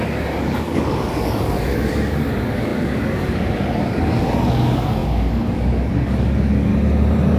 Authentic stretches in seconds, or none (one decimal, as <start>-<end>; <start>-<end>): 6.7-7.4